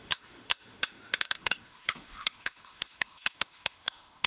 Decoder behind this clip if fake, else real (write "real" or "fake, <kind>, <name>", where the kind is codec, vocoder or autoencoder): fake, autoencoder, DAC-VAE